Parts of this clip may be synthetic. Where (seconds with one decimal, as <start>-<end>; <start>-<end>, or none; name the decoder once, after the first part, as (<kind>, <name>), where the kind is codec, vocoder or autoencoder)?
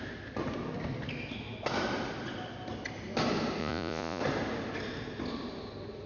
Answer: 3.6-4.2 (vocoder, Vocos)